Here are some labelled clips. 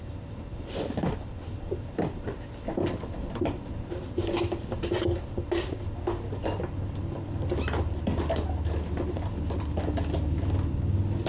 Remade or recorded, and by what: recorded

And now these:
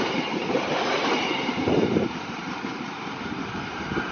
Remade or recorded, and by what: remade, vocoder, BigVGAN v2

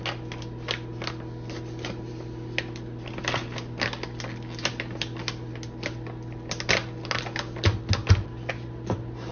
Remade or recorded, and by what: recorded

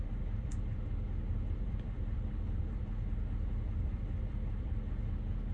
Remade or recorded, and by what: remade, vocoder, BigVGAN v2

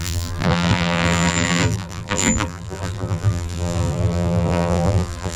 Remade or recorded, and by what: remade, vocoder, BigVGAN v2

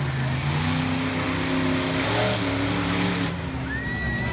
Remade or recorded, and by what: recorded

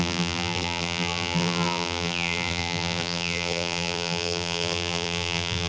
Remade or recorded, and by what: remade, vocoder, BigVGAN v2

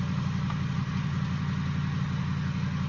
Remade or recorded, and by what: recorded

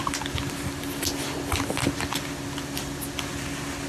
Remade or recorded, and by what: recorded